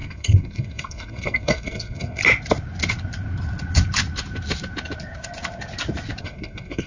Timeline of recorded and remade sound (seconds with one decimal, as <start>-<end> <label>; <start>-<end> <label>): 0.0-2.2 remade; 2.2-6.2 recorded; 6.2-6.9 remade